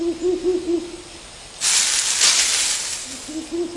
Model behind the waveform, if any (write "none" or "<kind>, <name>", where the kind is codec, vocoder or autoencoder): none